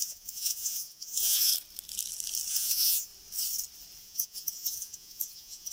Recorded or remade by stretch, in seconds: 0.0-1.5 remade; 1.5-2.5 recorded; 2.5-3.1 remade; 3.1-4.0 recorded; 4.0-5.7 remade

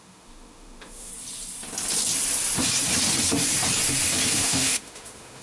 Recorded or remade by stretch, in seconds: 0.0-1.1 remade; 1.1-4.3 recorded; 4.3-5.4 remade

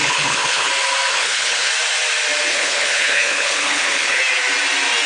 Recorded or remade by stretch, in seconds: 0.0-0.7 remade; 0.7-1.1 recorded; 1.1-1.7 remade; 1.7-2.5 recorded; 2.5-4.2 remade; 4.2-5.1 recorded

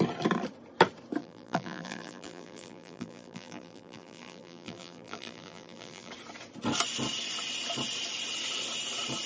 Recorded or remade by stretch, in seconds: 0.0-1.2 recorded; 1.2-6.1 remade; 6.1-9.3 recorded